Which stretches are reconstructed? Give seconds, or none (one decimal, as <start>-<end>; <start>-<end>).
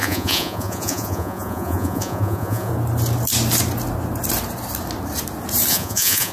0.0-2.7; 5.7-6.3